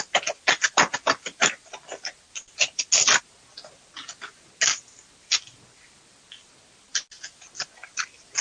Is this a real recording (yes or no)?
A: yes